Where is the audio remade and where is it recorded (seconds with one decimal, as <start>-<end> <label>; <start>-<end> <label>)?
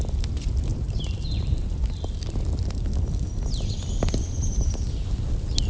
0.0-0.7 recorded; 0.7-1.5 remade; 1.5-5.7 recorded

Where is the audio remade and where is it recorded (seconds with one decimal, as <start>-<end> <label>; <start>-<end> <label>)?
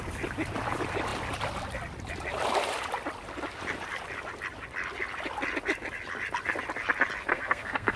0.0-7.3 recorded; 7.3-8.0 remade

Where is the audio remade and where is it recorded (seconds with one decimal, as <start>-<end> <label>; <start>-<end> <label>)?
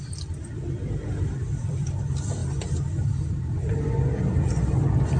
0.0-2.4 remade; 2.4-3.4 recorded; 3.4-5.2 remade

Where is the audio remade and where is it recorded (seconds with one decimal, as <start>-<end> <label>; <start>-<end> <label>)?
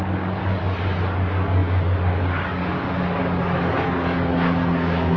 0.0-5.2 remade